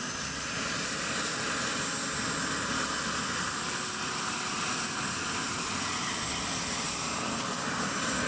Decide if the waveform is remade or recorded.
recorded